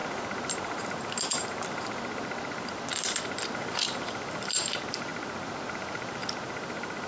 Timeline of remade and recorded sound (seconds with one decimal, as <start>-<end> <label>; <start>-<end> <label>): 0.0-3.5 recorded; 3.5-5.1 remade; 5.1-5.7 recorded; 5.7-6.2 remade; 6.2-7.1 recorded